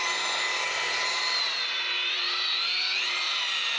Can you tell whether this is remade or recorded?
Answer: remade